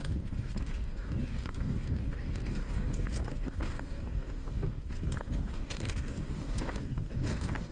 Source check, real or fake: fake